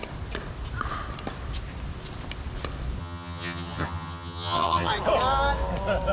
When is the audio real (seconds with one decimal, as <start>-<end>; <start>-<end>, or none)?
0.0-3.0; 4.9-6.1